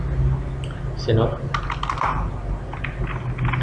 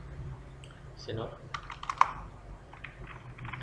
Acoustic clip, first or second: first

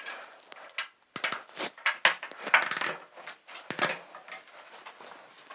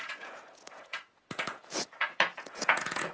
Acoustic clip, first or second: first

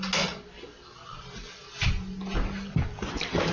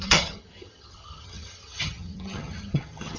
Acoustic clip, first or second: first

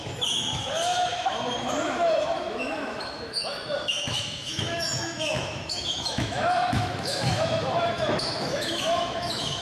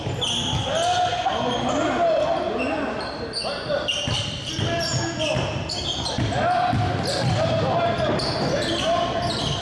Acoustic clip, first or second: second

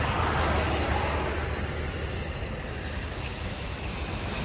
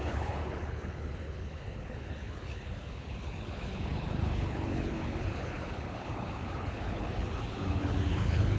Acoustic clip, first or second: first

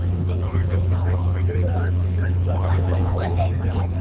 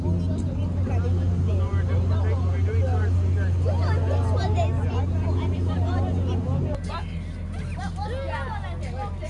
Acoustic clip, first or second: second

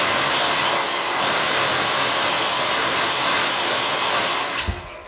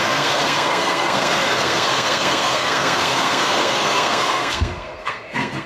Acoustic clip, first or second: first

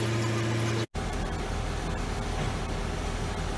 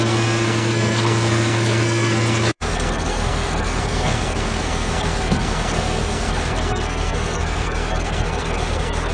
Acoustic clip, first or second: first